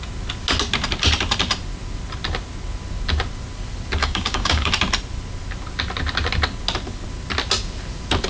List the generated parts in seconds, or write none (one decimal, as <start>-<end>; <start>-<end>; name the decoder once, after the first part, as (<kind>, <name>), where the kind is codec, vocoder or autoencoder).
4.0-4.7 (codec, DAC)